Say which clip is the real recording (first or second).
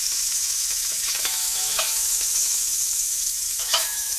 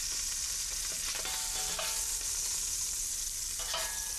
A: second